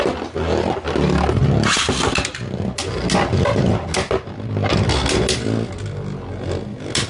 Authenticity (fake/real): real